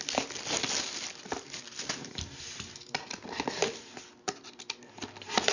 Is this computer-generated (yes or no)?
no